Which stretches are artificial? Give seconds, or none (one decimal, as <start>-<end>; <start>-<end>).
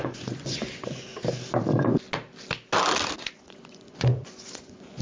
0.0-1.1; 3.2-5.0